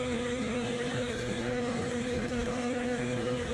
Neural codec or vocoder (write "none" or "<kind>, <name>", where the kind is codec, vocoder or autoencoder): codec, SNAC